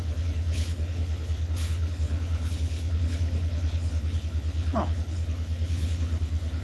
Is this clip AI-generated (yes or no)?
yes